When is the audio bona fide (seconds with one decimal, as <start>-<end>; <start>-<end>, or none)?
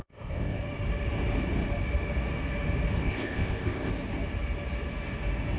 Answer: 0.6-3.0; 3.9-5.6